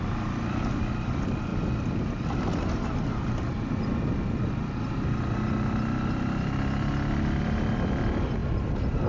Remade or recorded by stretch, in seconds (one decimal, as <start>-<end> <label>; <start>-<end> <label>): 0.0-8.4 remade; 8.4-9.1 recorded